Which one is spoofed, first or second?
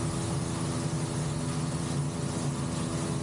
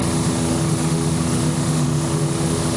second